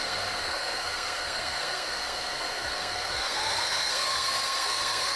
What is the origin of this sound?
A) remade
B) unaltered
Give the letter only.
A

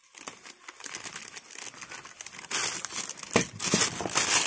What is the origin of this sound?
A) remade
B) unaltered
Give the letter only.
B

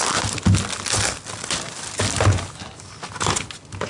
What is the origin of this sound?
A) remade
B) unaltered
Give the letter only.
B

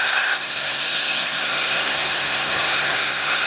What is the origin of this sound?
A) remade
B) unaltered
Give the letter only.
A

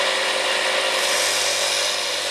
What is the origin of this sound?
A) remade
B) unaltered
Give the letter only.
B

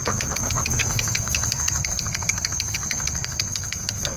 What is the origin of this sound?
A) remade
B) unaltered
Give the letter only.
A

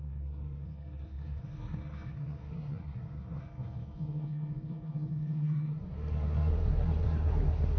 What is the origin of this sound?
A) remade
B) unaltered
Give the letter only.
A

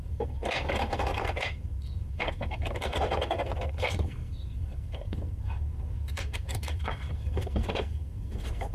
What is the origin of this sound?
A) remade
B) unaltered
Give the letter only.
A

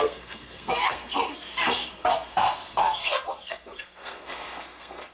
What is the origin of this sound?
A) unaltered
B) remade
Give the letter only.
B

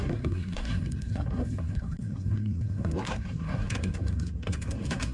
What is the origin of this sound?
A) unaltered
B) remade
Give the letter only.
B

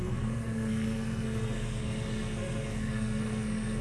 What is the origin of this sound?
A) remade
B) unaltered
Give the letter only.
A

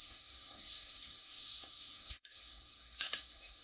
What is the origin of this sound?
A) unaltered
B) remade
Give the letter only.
B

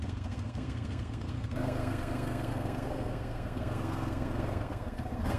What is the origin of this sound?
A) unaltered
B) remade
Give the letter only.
B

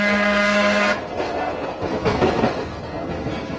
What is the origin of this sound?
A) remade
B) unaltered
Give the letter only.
A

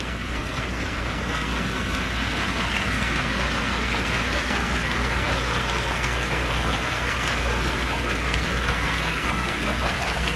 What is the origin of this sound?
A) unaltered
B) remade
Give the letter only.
B